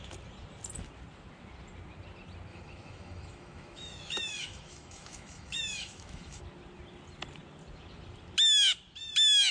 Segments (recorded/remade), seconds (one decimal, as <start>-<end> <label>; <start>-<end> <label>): 0.0-2.5 recorded; 2.5-6.4 remade; 6.4-9.5 recorded